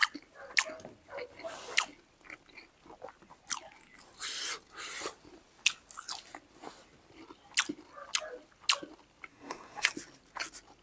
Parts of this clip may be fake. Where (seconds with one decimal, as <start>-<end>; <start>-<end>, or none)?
9.3-9.9